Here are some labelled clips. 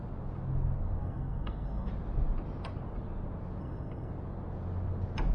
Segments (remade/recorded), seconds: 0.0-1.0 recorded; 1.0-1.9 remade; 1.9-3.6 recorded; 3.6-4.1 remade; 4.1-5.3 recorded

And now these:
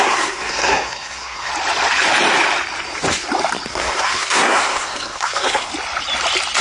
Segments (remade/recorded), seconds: 0.0-1.5 remade; 1.5-3.7 recorded; 3.7-5.7 remade; 5.7-6.6 recorded